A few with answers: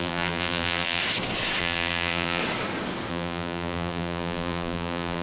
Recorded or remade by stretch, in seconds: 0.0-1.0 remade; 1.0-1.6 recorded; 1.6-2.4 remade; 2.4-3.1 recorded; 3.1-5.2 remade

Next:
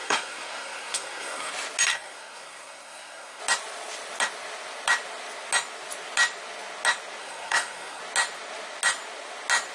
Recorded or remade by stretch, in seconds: 0.0-1.5 remade; 1.5-1.9 recorded; 1.9-3.4 remade; 3.4-7.2 recorded; 7.2-8.0 remade; 8.0-9.7 recorded

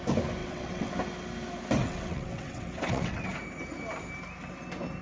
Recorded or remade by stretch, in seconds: 0.0-0.4 recorded; 0.4-0.9 remade; 0.9-1.8 recorded; 1.8-3.3 remade; 3.3-5.0 recorded

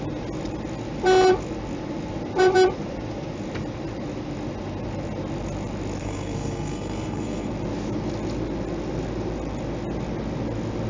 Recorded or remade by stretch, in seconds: 0.0-6.0 recorded; 6.0-7.5 remade; 7.5-10.9 recorded